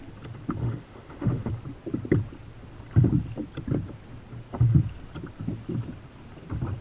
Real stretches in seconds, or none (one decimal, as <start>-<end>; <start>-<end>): 0.0-0.6; 1.5-6.8